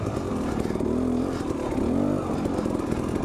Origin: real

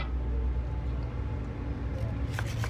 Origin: real